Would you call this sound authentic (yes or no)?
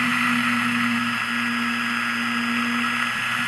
yes